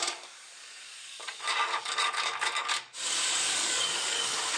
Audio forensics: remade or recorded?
remade